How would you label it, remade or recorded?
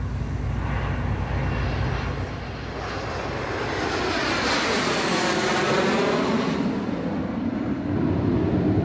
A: recorded